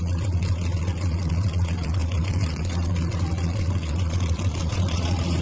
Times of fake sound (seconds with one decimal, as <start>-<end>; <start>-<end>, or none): 0.0-5.4